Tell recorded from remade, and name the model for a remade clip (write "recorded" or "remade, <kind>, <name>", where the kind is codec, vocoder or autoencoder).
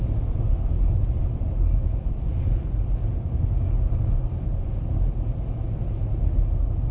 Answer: recorded